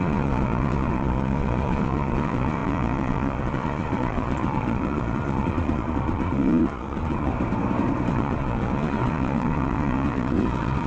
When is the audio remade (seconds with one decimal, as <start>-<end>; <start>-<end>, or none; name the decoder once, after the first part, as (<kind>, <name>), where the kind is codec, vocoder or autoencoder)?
0.0-7.3 (vocoder, Vocos); 8.1-10.9

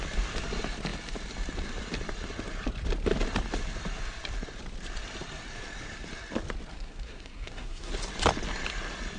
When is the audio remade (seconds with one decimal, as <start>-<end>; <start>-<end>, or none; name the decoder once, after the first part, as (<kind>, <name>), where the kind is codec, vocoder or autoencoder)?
6.7-7.9 (codec, SNAC)

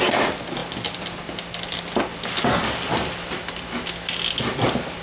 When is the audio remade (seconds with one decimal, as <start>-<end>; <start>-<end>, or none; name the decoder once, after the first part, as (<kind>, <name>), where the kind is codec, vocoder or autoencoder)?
none

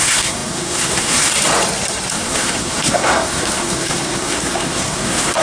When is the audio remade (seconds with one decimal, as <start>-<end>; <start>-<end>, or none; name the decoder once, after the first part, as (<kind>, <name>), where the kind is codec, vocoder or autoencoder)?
0.0-1.3 (codec, SNAC); 2.1-5.4

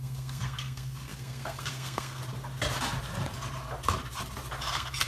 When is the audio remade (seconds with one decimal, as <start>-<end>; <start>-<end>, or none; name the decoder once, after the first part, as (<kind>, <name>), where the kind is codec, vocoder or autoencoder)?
0.0-2.2 (codec, SNAC); 4.6-5.1